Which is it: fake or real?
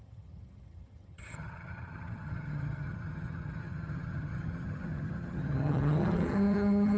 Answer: fake